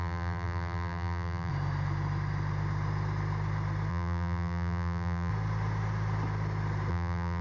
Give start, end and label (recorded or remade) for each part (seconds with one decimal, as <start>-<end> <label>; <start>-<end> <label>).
0.0-1.5 remade; 1.5-3.9 recorded; 3.9-5.3 remade; 5.3-6.9 recorded; 6.9-7.4 remade